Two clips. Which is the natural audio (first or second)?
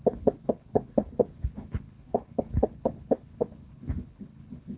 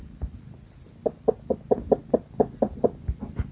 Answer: second